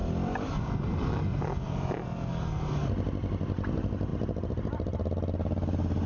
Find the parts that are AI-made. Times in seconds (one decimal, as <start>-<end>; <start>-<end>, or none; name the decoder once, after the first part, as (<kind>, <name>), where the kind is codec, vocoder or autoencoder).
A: none